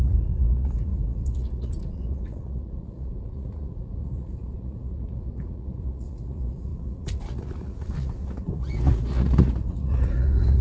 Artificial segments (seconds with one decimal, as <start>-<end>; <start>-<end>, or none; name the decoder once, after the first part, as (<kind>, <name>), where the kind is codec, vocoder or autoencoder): 0.0-10.6 (vocoder, Vocos)